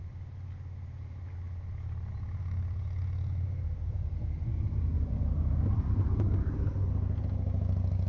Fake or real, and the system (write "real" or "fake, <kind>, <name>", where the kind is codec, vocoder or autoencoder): real